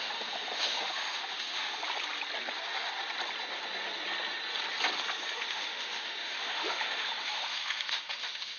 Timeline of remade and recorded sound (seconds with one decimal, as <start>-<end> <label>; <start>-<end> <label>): 0.0-1.8 remade; 1.8-5.5 recorded; 5.5-8.6 remade